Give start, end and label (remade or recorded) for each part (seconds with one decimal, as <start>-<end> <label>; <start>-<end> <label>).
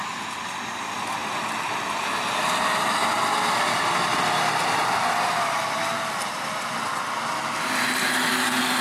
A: 0.0-8.8 recorded